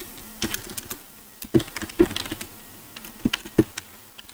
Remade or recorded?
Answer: recorded